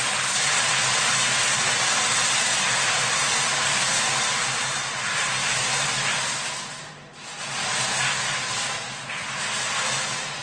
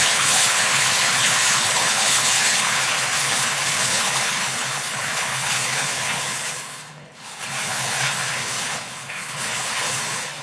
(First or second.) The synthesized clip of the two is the second